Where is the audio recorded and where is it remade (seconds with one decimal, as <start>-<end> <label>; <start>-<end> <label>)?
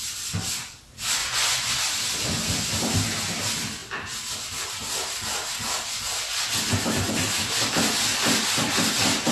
0.0-1.2 recorded; 1.2-1.7 remade; 1.7-9.3 recorded